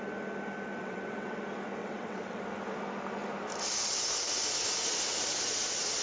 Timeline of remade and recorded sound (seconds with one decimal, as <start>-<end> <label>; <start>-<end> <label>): 0.0-0.8 recorded; 0.8-1.4 remade; 1.4-1.8 recorded; 1.8-2.4 remade; 2.4-6.0 recorded